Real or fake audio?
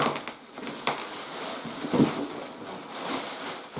real